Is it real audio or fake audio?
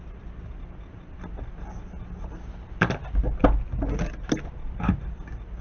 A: real